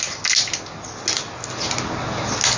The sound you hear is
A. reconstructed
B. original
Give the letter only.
B